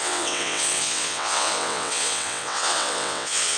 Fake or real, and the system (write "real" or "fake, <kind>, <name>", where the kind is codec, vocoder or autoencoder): fake, vocoder, WaveNeXt